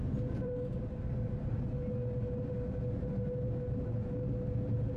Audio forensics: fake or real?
real